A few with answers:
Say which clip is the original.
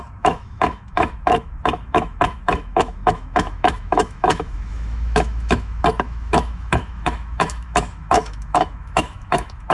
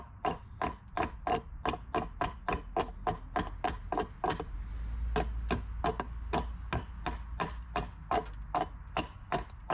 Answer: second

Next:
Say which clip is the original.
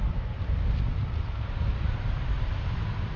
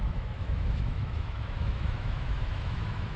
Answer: first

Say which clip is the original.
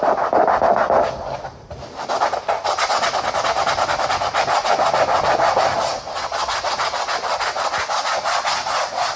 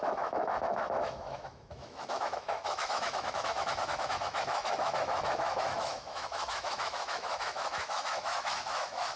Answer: first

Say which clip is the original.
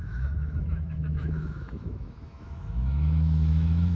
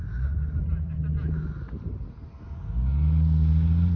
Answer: second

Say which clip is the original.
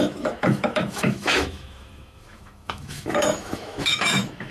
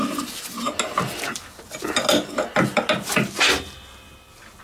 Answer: second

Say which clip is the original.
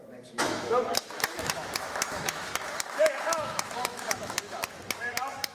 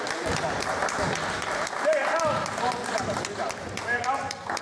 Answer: second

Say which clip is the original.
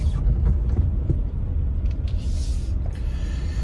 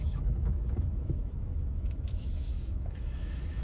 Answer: first